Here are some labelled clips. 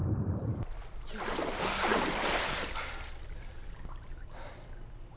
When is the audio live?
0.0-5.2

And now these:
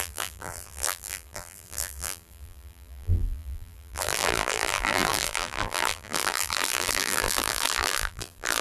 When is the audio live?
none

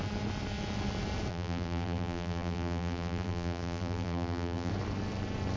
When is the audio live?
0.0-1.3; 4.7-5.6

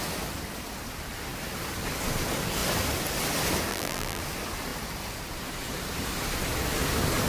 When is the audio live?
0.0-3.7; 4.2-7.3

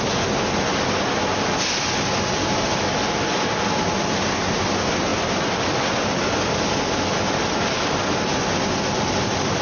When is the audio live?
0.0-9.6